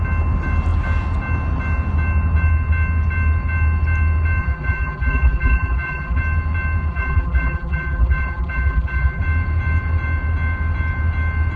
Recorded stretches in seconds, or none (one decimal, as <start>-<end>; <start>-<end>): 0.0-4.4; 6.2-6.9; 9.2-11.6